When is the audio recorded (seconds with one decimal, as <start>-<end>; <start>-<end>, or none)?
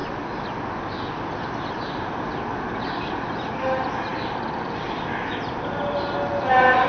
0.0-6.9